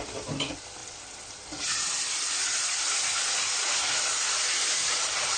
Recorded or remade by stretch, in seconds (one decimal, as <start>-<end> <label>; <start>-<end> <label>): 0.0-5.4 recorded